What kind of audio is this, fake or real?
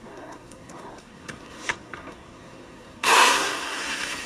fake